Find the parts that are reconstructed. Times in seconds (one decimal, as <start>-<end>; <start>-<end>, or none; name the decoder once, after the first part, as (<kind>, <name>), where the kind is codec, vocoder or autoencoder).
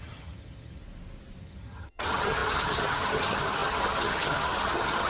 0.0-0.8 (vocoder, HiFi-GAN); 1.4-5.1